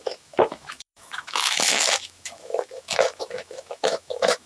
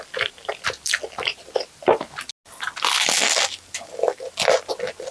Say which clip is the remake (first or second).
first